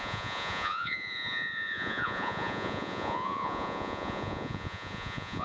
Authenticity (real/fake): fake